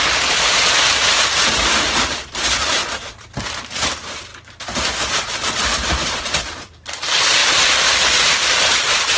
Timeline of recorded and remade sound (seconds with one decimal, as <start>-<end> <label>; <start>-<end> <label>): 0.0-2.8 remade; 2.8-3.6 recorded; 3.6-4.3 remade; 4.3-5.5 recorded; 5.5-9.2 remade